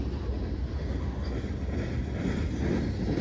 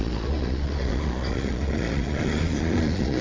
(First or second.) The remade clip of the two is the second